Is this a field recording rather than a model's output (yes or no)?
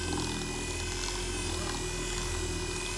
yes